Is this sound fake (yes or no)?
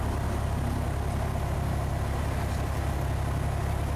no